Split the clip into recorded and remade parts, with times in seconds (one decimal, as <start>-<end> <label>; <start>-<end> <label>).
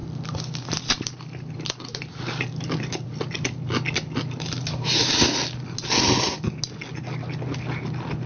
0.0-4.9 remade; 4.9-8.3 recorded